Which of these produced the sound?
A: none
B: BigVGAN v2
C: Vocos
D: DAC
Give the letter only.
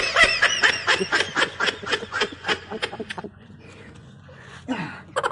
C